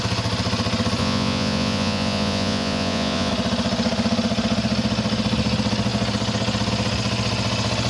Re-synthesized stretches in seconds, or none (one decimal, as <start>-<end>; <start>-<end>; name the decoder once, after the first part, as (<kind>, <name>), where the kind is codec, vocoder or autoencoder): 1.0-3.3 (vocoder, Vocos)